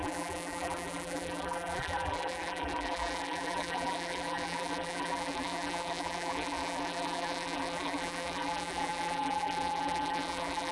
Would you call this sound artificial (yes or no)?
yes